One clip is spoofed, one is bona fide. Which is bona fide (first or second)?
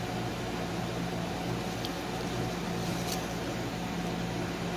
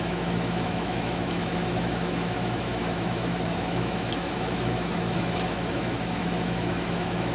first